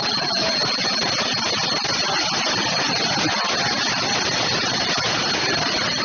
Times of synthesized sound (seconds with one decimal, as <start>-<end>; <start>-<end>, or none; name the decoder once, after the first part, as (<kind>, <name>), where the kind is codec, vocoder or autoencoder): none